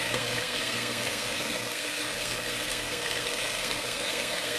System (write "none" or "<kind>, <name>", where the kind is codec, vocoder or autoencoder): codec, SNAC